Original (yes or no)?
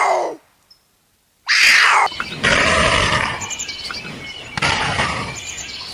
yes